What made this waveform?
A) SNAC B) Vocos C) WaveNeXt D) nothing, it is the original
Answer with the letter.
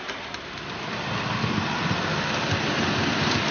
D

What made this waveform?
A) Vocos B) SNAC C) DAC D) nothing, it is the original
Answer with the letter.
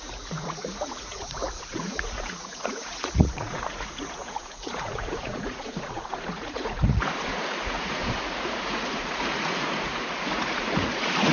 A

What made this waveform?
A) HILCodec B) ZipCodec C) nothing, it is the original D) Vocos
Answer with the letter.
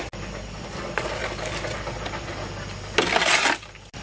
C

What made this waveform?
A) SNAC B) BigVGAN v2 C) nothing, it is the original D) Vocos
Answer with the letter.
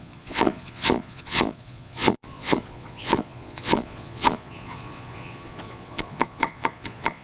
D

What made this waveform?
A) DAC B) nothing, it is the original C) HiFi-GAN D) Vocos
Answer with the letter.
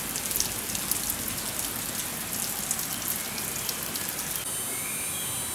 B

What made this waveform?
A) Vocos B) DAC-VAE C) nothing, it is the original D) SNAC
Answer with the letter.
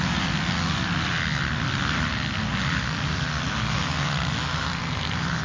C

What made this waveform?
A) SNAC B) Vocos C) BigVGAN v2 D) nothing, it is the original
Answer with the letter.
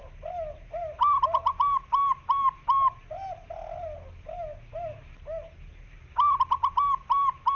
D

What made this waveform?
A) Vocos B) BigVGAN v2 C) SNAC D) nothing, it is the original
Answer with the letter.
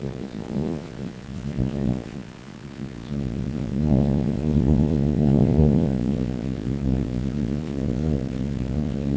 A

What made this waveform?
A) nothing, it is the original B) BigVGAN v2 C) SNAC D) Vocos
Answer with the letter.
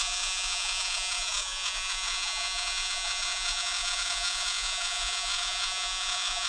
D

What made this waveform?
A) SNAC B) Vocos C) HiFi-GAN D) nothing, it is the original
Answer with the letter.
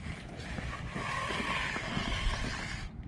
D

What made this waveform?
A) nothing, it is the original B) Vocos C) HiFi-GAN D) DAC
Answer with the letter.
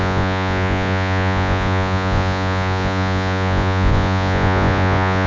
B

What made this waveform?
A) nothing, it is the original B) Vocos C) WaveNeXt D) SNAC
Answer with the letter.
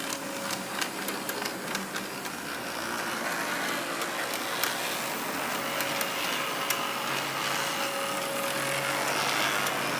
A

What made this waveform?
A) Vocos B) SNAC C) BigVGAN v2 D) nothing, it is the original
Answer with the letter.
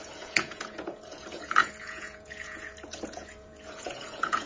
A